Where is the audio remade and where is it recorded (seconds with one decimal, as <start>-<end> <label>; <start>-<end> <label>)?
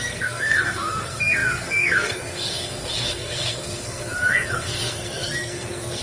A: 0.0-6.0 remade